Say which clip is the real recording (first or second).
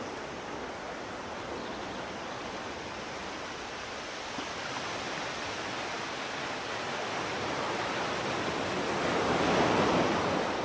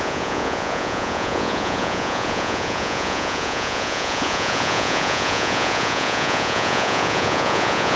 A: first